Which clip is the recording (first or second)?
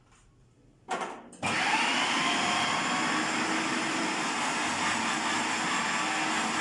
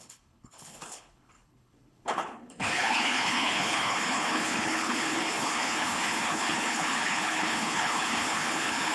first